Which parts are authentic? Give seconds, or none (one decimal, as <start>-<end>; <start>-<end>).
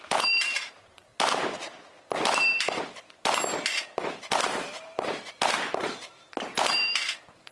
1.1-4.0